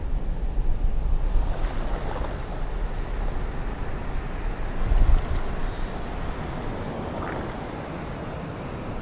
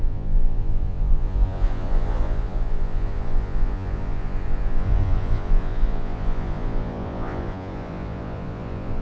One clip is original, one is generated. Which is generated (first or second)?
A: second